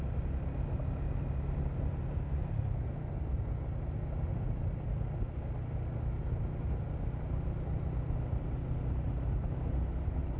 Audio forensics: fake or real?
real